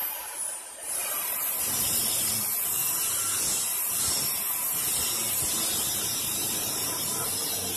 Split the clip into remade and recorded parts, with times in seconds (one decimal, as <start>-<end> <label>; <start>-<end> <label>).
0.0-2.8 remade; 2.8-5.8 recorded; 5.8-7.8 remade